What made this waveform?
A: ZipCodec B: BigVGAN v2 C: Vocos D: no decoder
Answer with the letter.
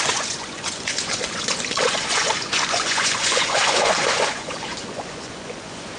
C